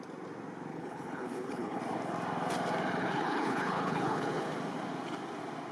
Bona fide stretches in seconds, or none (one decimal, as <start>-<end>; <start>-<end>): 0.0-0.7; 1.8-3.0; 4.5-5.7